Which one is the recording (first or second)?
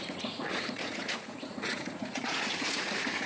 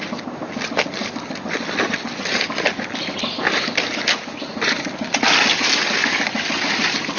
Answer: second